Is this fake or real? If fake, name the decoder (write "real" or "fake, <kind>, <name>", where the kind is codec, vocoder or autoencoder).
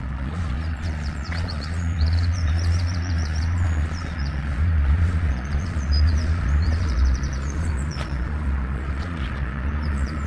fake, vocoder, Vocos